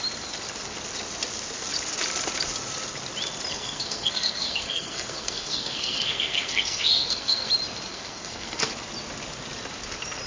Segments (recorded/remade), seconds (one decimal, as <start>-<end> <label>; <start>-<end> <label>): 0.0-3.5 recorded; 3.5-7.5 remade; 7.5-7.9 recorded; 7.9-8.7 remade; 8.7-10.3 recorded